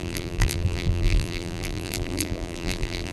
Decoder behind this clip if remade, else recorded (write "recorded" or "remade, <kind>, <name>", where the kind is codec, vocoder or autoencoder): remade, vocoder, BigVGAN v2